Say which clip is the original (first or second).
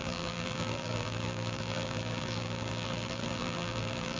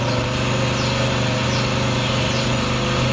second